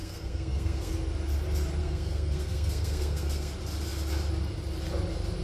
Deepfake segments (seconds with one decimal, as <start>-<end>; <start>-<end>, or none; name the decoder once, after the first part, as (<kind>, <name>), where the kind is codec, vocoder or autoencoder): 0.0-0.9 (codec, SNAC); 1.8-3.5